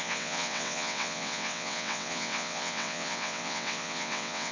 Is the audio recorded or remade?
remade